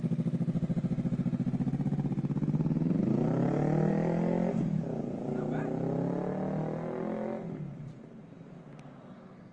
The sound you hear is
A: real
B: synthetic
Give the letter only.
A